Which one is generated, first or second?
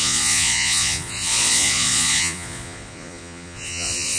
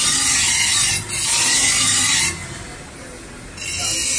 first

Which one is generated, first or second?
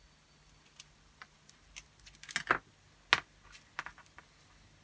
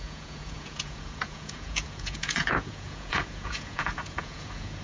second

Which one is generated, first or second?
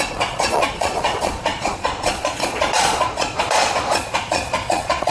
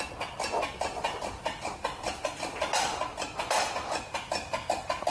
first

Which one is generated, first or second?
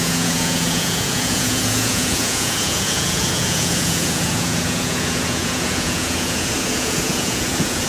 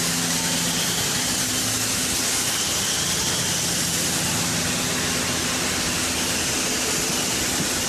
first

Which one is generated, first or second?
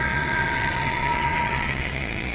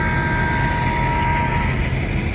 first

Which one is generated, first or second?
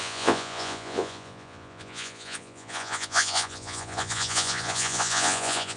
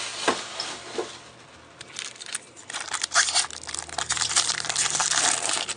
first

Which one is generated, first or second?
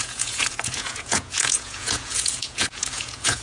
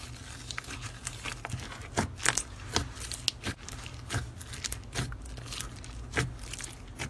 first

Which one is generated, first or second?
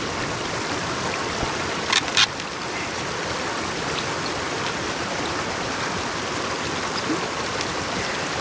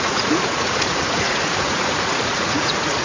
second